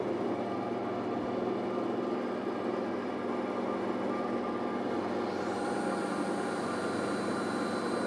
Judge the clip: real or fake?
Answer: real